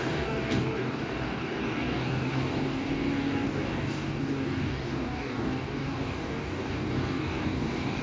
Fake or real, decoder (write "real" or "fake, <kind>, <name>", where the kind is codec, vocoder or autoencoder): fake, codec, DAC